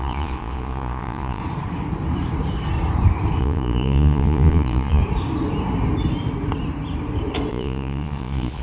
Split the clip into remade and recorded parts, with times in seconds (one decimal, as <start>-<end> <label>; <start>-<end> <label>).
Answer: 0.0-1.4 remade; 1.4-3.4 recorded; 3.4-5.0 remade; 5.0-7.5 recorded; 7.5-8.6 remade